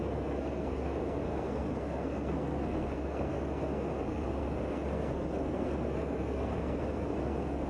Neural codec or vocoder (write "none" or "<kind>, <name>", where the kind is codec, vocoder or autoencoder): codec, SNAC